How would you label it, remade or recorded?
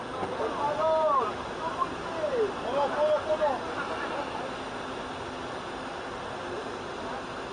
recorded